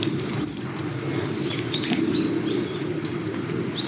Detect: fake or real real